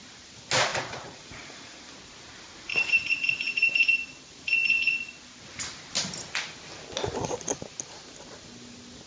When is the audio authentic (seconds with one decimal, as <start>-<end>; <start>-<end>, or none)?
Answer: 0.0-0.7; 1.8-2.7; 3.5-9.1